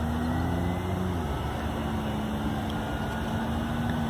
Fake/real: real